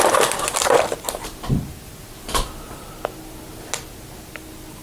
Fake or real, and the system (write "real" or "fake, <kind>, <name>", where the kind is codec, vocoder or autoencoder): real